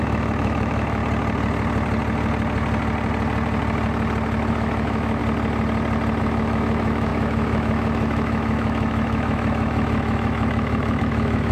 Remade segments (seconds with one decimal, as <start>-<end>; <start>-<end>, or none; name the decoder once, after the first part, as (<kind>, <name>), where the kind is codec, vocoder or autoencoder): 0.0-1.0 (autoencoder, DAC-VAE); 4.5-5.2; 6.2-11.5